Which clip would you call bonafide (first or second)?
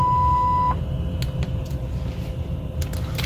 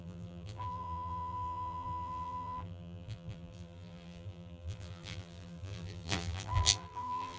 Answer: first